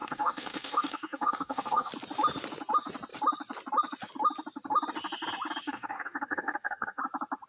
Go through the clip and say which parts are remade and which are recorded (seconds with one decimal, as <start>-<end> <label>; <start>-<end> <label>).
0.0-1.9 remade; 1.9-5.6 recorded; 5.6-7.0 remade; 7.0-7.5 recorded